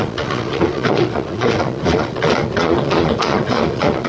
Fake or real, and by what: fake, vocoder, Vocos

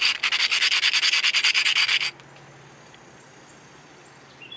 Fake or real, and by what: real